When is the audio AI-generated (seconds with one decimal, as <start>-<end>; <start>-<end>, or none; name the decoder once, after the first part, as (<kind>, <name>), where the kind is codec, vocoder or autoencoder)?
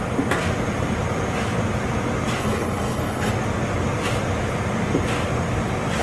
2.4-3.3 (codec, HILCodec)